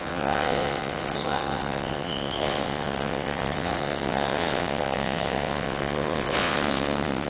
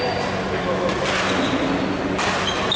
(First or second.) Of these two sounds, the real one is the second